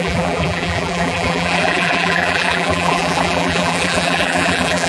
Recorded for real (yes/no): no